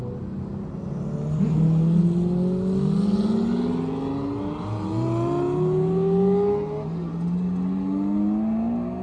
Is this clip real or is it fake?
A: real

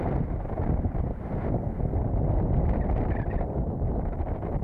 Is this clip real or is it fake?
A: real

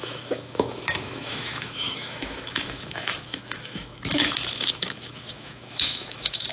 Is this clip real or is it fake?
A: fake